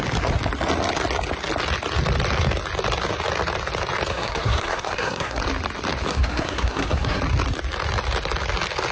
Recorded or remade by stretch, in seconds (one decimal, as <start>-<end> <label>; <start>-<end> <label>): 0.0-4.1 recorded; 4.1-5.4 remade; 5.4-6.1 recorded; 6.1-7.2 remade; 7.2-8.9 recorded